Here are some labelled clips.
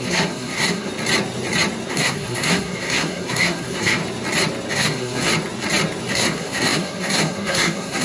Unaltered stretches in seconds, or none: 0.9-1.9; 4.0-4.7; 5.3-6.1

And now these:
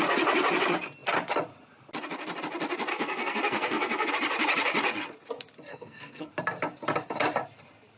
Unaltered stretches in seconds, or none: 0.0-2.9; 4.1-5.7; 6.3-8.0